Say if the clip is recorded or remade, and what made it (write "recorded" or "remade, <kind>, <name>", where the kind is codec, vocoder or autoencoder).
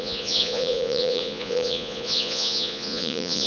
remade, vocoder, Vocos